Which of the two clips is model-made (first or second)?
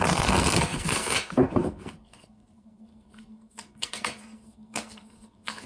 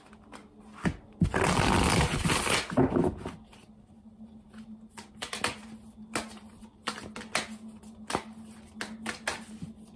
first